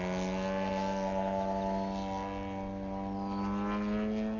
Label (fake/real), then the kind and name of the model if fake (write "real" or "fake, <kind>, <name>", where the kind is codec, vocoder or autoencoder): real